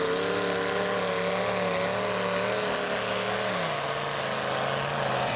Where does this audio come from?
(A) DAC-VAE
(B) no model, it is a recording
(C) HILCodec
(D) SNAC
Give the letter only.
B